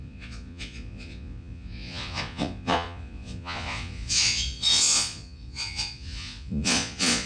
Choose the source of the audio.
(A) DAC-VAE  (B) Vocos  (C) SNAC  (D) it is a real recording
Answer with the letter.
B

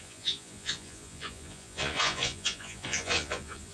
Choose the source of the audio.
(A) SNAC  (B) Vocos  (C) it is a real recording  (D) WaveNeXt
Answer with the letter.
B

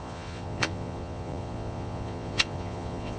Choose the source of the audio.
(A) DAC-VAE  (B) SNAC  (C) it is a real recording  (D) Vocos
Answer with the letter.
D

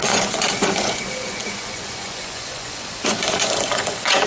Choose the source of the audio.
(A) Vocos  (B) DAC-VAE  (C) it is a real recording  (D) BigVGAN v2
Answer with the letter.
A